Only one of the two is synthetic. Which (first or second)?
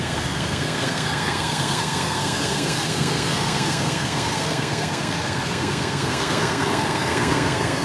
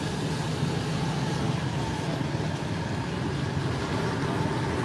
first